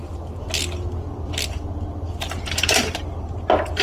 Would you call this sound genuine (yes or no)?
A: yes